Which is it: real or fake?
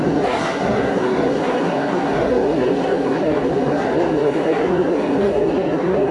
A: fake